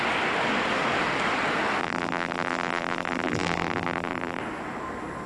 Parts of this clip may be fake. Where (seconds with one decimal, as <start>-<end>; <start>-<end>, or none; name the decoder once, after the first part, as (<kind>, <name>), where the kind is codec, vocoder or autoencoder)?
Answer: 1.8-4.4 (vocoder, BigVGAN v2)